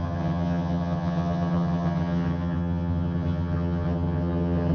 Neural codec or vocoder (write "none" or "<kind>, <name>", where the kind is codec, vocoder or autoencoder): vocoder, HiFi-GAN